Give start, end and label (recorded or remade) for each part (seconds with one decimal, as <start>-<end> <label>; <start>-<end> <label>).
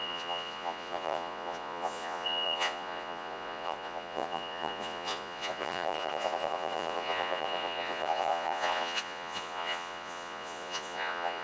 0.0-11.4 remade